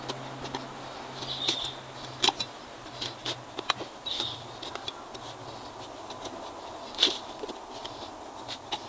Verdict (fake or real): real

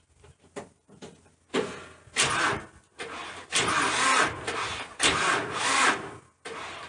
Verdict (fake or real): real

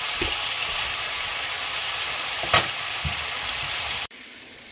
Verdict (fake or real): fake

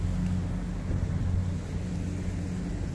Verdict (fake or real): real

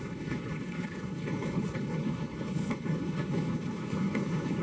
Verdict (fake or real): fake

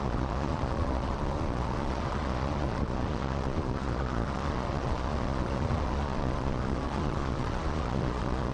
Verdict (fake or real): fake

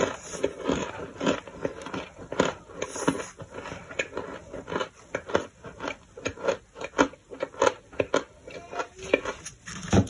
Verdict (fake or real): real